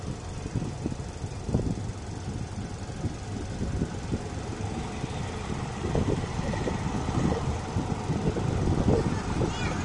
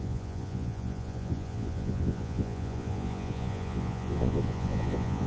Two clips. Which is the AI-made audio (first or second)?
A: second